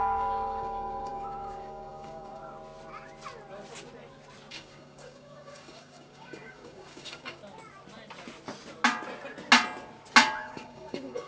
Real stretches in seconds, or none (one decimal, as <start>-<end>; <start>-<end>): 2.4-4.5; 7.4-10.4